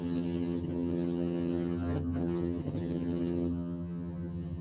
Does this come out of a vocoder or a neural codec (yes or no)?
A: yes